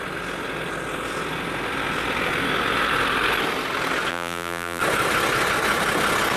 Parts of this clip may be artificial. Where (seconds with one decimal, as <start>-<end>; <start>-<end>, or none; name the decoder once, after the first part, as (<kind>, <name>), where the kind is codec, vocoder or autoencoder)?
4.1-4.8 (vocoder, BigVGAN v2)